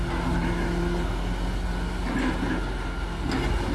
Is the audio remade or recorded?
recorded